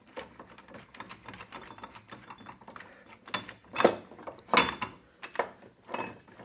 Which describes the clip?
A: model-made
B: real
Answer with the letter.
B